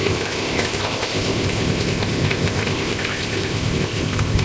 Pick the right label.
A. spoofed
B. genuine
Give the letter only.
A